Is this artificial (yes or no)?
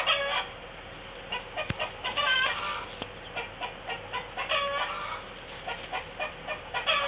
no